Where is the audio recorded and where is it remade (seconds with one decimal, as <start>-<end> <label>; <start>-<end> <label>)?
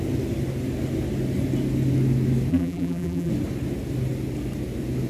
0.0-2.5 recorded; 2.5-3.3 remade; 3.3-5.1 recorded